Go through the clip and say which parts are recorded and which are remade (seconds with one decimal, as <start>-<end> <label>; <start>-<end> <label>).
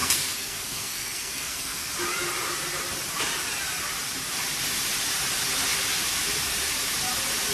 0.0-1.9 remade; 1.9-7.5 recorded